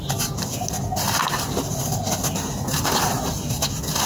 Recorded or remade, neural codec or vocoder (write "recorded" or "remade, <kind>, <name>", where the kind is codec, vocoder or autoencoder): recorded